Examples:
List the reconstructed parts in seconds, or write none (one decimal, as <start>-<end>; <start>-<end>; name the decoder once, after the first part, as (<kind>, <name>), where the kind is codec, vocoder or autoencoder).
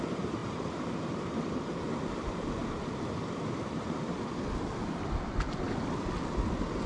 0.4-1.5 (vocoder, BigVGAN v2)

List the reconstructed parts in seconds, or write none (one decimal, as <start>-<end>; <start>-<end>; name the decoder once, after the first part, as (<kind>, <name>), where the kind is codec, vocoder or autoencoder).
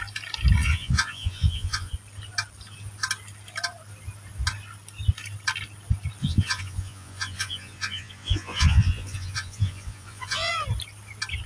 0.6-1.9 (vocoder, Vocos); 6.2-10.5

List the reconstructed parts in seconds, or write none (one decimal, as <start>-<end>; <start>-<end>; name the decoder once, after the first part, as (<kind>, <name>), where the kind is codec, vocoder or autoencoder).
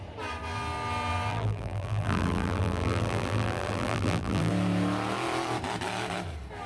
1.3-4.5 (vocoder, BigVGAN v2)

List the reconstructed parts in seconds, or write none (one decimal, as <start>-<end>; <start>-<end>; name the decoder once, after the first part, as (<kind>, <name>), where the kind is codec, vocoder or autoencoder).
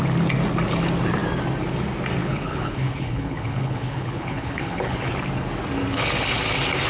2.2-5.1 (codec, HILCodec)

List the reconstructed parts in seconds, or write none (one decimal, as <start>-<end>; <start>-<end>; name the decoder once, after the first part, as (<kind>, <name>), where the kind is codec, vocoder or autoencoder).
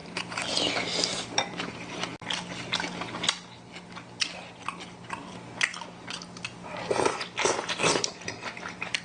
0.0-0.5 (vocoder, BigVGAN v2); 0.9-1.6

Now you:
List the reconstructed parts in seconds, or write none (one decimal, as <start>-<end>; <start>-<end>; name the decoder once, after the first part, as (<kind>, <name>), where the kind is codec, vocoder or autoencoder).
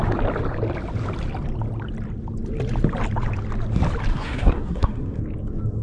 4.1-5.2 (codec, SNAC)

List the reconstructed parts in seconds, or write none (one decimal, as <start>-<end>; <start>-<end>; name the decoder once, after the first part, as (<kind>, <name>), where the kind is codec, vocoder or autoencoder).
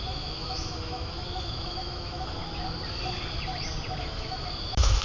0.0-2.4 (autoencoder, DAC-VAE); 4.0-5.0